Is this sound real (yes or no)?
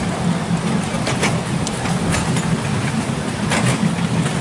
yes